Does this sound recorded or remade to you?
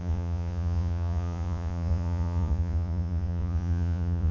remade